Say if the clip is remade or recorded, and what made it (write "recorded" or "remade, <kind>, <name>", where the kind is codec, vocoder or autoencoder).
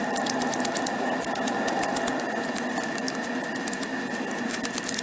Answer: recorded